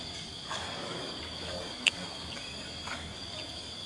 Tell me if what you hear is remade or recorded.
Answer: remade